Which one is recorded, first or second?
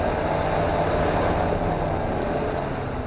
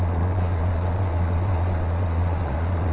first